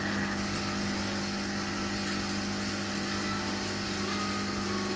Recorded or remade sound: recorded